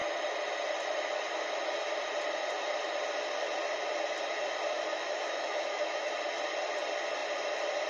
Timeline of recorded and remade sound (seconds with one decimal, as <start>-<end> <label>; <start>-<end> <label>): 0.0-4.9 recorded; 4.9-6.1 remade; 6.1-7.9 recorded